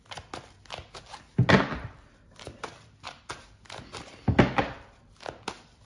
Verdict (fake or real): real